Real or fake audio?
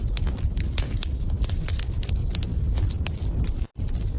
real